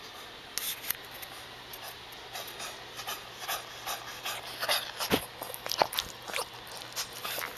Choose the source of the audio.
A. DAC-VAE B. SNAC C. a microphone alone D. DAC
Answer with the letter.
C